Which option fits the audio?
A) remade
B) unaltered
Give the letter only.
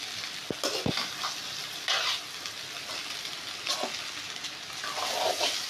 B